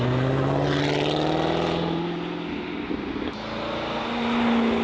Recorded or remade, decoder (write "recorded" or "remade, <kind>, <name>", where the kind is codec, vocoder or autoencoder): recorded